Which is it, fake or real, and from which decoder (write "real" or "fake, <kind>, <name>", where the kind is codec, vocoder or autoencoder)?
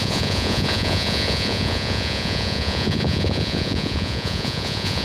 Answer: fake, vocoder, Vocos